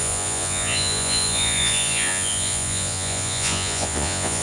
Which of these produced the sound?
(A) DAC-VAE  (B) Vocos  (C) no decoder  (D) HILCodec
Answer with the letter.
B